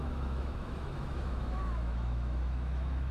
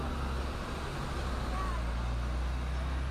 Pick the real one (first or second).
second